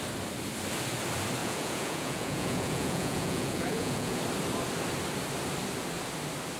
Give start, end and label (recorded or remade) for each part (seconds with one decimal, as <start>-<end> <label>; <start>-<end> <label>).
0.0-1.4 recorded; 1.4-4.2 remade; 4.2-6.6 recorded